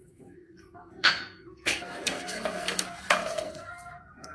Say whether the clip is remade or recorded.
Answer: remade